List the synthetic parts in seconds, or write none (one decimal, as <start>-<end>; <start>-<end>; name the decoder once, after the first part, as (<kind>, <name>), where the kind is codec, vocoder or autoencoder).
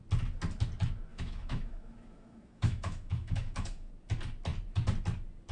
1.1-3.9 (autoencoder, DAC-VAE)